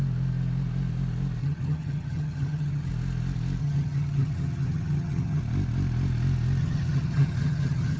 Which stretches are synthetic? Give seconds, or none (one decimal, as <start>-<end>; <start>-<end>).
1.4-2.9; 3.6-5.4; 6.6-8.0

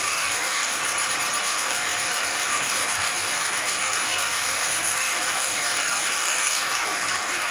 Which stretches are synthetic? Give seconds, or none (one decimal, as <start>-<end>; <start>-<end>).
0.0-0.8; 1.4-7.5

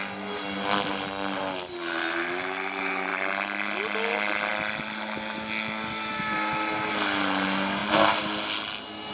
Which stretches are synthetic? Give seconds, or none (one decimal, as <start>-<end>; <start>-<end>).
none